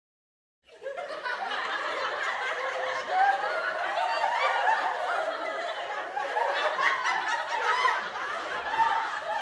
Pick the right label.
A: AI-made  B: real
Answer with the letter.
B